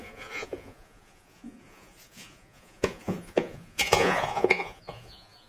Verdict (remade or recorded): remade